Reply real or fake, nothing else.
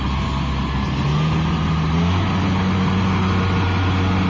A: real